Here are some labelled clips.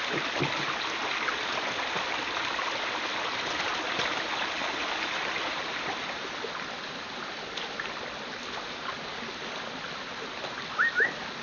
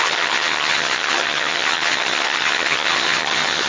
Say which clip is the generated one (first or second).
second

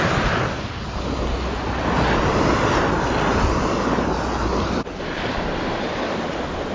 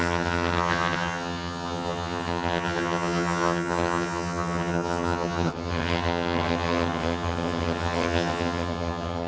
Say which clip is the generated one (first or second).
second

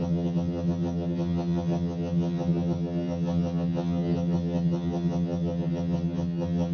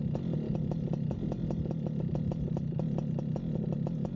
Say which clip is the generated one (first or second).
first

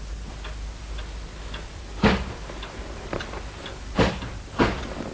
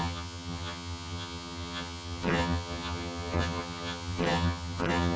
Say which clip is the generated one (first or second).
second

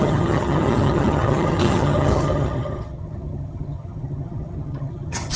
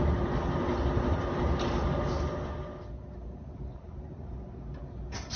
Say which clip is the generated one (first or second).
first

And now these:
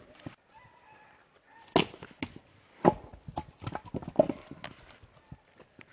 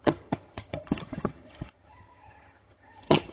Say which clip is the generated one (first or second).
second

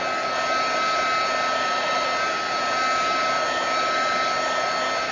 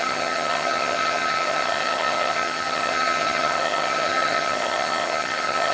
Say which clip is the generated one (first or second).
second